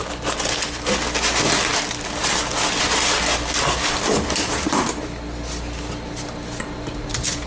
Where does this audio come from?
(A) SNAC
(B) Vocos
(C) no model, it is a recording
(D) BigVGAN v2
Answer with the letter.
C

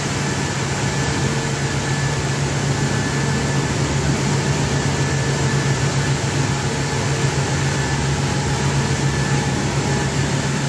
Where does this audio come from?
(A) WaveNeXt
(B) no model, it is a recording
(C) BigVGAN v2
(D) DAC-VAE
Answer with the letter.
B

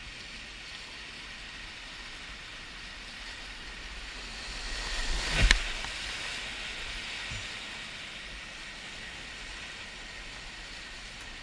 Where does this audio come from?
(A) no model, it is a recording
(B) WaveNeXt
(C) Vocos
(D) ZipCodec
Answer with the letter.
A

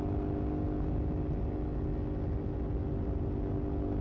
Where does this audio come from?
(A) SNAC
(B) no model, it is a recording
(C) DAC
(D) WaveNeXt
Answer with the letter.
B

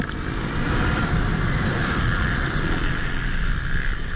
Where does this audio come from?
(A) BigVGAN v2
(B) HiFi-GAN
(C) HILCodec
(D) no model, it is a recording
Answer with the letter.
D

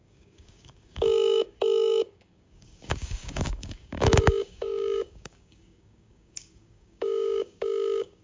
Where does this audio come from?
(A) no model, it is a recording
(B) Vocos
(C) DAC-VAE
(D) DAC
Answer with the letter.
D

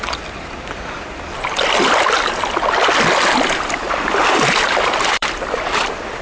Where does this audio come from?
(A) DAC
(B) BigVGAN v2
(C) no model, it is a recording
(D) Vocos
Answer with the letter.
B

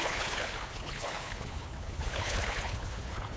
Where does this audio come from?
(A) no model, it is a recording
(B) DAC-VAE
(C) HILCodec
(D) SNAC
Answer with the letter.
C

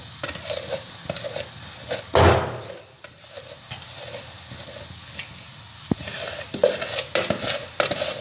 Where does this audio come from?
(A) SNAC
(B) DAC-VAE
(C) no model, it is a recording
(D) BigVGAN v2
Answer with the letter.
C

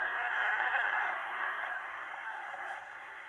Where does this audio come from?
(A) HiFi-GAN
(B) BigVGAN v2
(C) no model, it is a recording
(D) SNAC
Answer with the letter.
D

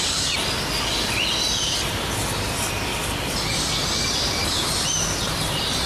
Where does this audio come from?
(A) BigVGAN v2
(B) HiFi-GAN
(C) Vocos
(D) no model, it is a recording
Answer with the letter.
A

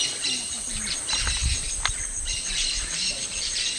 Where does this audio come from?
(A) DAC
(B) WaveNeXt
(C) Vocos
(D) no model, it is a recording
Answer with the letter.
D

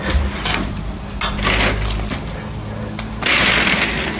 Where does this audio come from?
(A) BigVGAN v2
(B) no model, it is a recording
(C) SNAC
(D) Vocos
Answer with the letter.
B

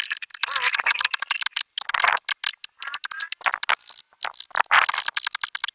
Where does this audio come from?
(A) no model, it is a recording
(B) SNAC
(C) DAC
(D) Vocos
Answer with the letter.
A